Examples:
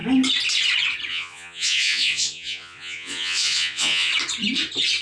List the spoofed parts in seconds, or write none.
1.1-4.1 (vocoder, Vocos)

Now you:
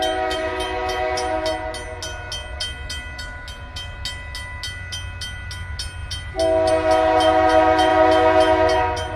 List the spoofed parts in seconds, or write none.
none

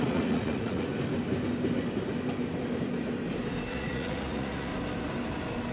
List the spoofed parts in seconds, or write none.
0.0-0.9 (vocoder, Vocos); 3.7-4.7

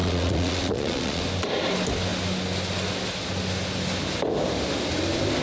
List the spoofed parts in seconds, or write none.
0.0-1.2 (vocoder, Vocos)

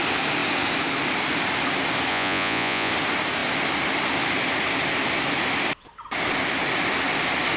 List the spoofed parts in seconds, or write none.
2.1-2.9 (vocoder, Vocos)

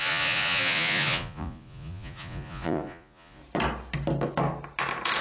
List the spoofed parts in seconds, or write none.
0.0-3.4 (vocoder, Vocos)

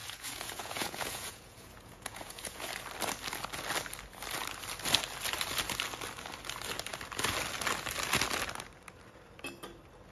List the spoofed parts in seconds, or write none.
0.0-2.7 (vocoder, Vocos)